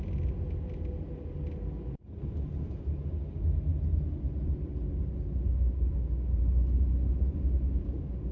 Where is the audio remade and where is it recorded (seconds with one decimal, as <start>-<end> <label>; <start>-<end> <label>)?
0.0-8.3 recorded